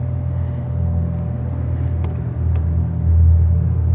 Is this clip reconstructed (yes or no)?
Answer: no